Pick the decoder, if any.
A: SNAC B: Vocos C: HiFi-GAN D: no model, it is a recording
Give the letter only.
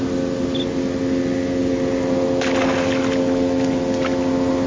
D